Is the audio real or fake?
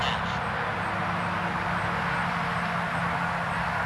real